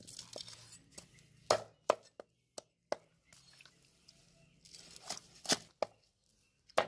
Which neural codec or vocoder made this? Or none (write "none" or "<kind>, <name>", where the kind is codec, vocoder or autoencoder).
none